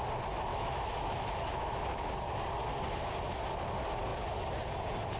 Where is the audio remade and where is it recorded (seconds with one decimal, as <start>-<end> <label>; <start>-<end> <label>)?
0.0-0.5 recorded; 0.5-1.8 remade; 1.8-5.2 recorded